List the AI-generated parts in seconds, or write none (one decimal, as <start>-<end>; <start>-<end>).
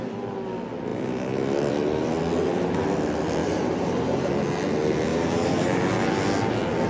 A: 3.4-4.3; 5.1-5.8